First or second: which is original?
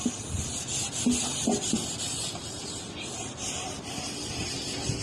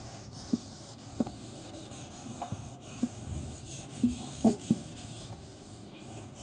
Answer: first